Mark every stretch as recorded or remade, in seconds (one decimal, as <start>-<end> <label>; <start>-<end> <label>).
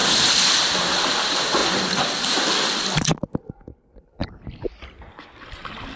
0.0-0.9 recorded; 0.9-1.6 remade; 1.6-2.4 recorded; 2.4-3.1 remade; 3.1-6.0 recorded